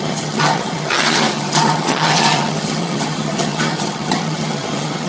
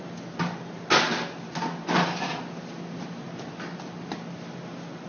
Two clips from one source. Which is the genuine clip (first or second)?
second